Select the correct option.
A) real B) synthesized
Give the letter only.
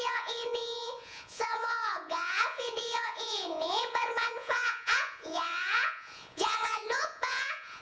B